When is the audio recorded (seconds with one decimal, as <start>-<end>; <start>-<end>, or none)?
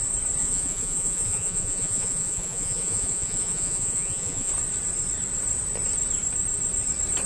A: 0.0-0.4; 4.5-7.3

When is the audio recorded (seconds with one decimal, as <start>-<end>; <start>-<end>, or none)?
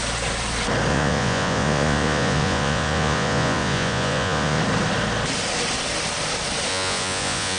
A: 0.0-0.9; 4.6-6.7